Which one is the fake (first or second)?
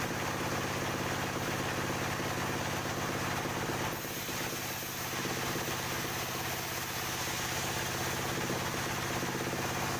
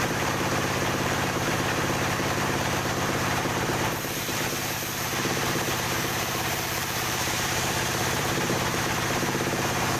second